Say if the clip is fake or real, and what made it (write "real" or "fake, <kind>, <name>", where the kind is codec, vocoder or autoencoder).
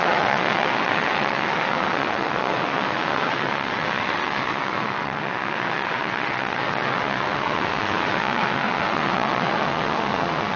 fake, vocoder, WaveNeXt